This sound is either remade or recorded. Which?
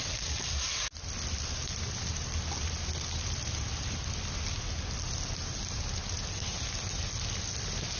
recorded